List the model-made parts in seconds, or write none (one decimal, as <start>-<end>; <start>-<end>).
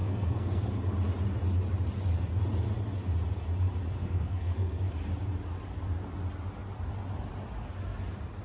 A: 0.0-0.7; 4.0-4.9